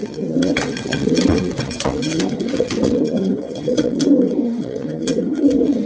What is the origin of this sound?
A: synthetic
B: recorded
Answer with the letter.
A